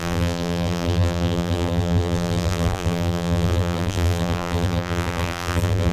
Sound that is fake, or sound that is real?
fake